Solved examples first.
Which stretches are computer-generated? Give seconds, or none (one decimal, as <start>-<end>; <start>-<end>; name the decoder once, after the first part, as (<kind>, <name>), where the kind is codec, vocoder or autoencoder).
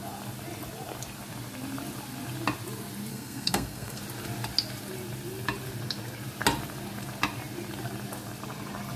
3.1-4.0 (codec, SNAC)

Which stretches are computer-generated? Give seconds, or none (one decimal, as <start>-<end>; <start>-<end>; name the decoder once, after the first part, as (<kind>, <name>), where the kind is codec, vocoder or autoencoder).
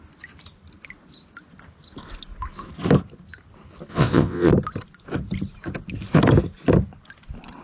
3.9-4.5 (vocoder, WaveNeXt)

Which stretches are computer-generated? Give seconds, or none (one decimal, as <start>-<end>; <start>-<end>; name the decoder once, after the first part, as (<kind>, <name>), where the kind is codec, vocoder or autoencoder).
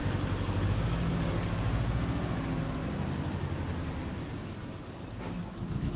none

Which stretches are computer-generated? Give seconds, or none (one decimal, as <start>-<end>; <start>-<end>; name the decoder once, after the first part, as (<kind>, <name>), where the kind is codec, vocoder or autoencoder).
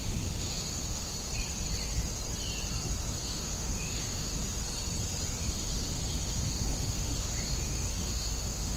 0.0-1.1 (autoencoder, DAC-VAE); 3.2-4.3; 5.4-8.8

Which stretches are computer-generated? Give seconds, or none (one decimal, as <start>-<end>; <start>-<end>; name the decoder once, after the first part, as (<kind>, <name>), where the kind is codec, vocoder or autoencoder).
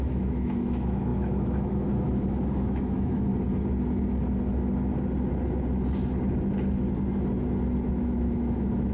0.0-3.3 (autoencoder, DAC-VAE); 7.9-8.9